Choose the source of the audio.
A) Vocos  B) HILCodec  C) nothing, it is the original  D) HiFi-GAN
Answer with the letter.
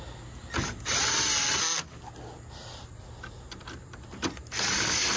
C